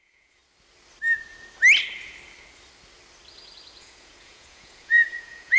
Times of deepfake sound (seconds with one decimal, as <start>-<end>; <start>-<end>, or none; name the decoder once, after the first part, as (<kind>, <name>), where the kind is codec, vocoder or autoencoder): 0.0-0.4 (vocoder, Vocos); 3.8-5.6